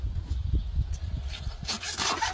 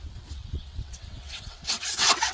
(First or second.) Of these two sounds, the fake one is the second